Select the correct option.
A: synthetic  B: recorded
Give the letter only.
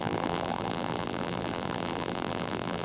A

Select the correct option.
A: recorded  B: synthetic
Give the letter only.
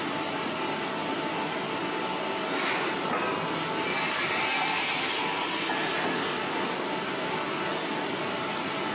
A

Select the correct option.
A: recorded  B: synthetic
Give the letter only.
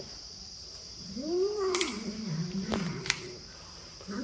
B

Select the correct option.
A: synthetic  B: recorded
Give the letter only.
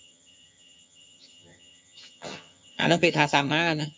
A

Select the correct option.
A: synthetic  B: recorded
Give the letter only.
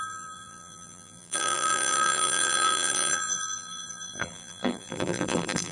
A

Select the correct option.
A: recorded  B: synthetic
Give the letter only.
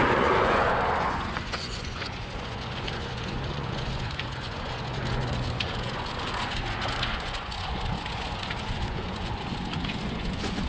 B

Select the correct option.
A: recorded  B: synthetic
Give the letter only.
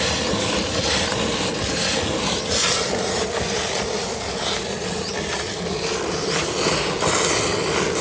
A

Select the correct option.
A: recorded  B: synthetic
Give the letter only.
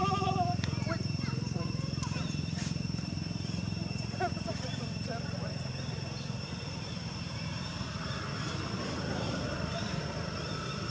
B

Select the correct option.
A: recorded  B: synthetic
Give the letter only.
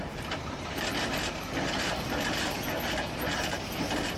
B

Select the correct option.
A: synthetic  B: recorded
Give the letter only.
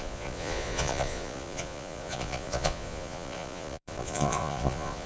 A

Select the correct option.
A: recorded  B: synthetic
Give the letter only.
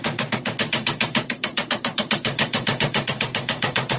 B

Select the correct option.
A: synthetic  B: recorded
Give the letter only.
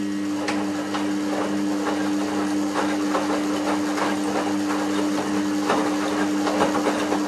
B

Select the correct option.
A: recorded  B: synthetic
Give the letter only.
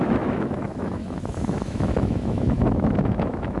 B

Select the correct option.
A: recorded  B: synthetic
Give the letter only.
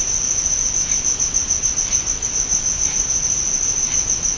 A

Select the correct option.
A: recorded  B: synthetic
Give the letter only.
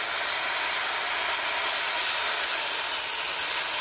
A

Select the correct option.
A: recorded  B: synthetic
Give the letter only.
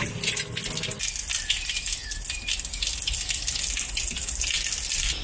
A